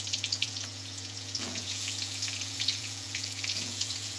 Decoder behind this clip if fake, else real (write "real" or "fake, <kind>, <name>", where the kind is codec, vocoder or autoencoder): fake, vocoder, Vocos